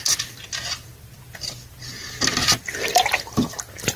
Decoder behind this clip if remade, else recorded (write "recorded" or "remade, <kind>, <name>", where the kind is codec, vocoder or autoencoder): recorded